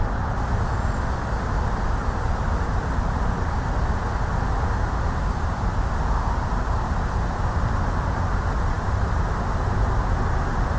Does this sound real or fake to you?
real